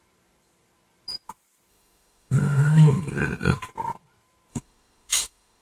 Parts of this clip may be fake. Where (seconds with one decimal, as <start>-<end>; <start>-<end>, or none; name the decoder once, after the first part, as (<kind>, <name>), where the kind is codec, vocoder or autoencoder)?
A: 1.7-3.7 (autoencoder, DAC-VAE); 4.5-5.6